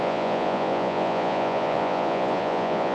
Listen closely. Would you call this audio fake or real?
fake